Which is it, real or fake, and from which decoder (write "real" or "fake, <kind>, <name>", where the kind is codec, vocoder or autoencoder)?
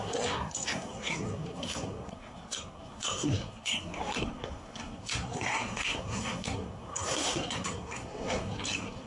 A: fake, codec, SNAC